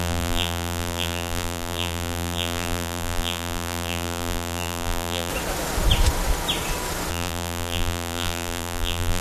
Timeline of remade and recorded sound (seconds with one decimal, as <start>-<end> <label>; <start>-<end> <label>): 0.0-5.3 remade; 5.3-7.1 recorded; 7.1-9.2 remade